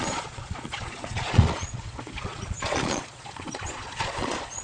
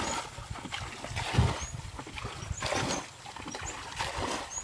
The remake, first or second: first